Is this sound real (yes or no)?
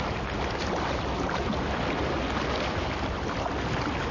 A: yes